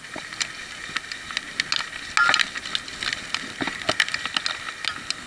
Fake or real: real